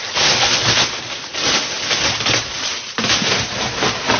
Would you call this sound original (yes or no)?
yes